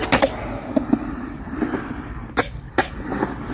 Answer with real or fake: real